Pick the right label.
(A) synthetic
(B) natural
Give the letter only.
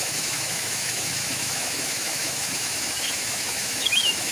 A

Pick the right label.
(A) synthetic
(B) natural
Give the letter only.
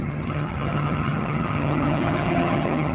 A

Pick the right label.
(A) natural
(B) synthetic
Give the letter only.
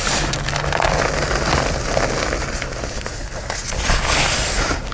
A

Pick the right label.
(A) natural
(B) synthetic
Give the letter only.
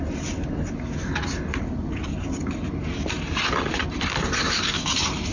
A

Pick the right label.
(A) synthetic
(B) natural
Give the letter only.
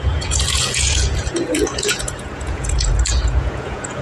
A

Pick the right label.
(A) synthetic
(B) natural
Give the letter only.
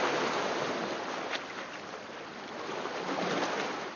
B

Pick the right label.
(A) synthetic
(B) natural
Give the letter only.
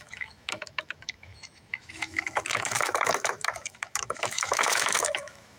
A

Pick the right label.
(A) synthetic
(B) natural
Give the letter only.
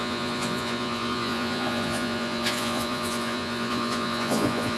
A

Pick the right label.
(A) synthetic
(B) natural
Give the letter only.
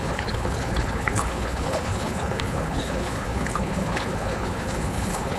A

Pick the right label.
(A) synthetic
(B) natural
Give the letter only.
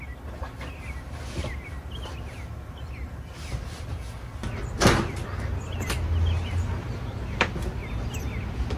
B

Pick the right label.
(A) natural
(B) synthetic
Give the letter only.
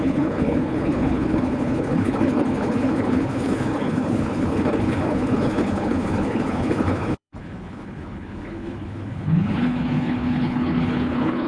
B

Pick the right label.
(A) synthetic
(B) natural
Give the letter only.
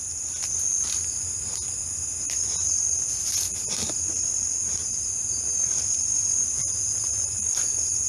B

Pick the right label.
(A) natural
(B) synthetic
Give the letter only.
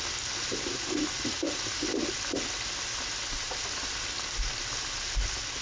A